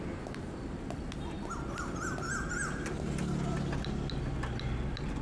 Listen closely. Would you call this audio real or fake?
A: real